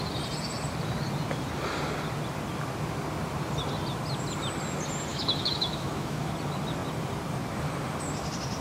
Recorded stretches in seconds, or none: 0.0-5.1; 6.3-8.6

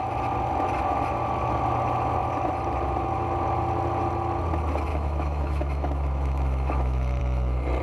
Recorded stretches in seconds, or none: 0.0-4.9; 7.2-7.8